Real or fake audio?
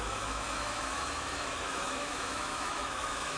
fake